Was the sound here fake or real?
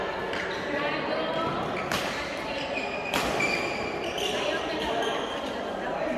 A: fake